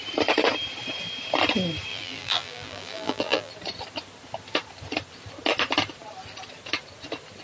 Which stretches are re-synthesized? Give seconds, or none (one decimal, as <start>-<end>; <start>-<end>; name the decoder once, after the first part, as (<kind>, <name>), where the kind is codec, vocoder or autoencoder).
1.9-3.5 (vocoder, BigVGAN v2)